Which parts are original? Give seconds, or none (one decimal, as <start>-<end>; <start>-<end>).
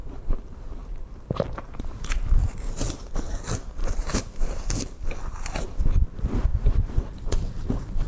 0.0-0.8; 2.4-3.8; 4.7-6.5; 7.0-8.1